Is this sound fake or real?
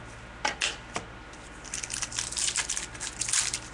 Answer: real